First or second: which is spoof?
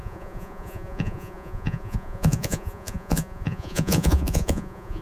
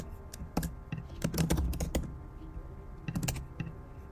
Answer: first